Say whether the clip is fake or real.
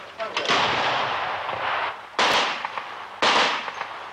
real